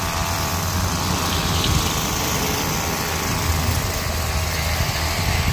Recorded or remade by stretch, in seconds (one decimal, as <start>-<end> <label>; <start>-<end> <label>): 0.0-5.5 recorded